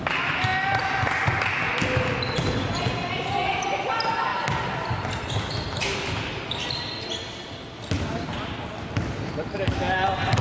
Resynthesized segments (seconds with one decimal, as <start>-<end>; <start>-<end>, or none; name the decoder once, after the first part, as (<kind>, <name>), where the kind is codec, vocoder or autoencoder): none